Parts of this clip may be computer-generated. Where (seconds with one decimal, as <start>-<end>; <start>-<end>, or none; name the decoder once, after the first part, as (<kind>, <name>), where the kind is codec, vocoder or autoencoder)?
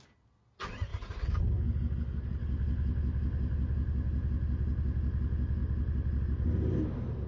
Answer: none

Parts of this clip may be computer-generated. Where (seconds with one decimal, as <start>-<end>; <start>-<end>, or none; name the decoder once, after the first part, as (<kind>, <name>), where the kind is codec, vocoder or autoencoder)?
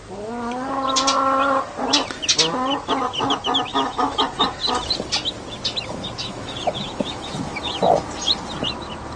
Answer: 3.7-4.2 (autoencoder, DAC-VAE); 6.3-7.8